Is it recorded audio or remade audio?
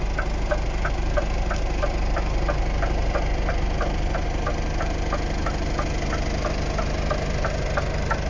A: recorded